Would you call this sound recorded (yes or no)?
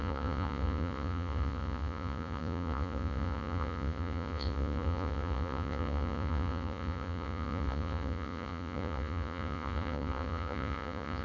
no